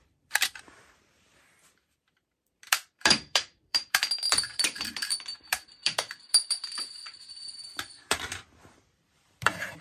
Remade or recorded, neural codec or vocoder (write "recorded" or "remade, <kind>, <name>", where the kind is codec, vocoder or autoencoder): remade, vocoder, BigVGAN v2